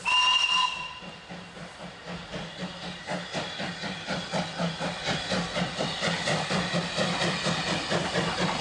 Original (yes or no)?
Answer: yes